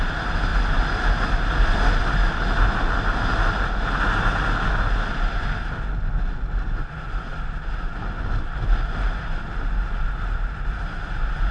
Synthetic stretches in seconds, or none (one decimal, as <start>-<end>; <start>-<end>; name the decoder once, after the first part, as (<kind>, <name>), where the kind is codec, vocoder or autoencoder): none